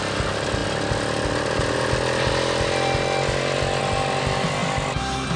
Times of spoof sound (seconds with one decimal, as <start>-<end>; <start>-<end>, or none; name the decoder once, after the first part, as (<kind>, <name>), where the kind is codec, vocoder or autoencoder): none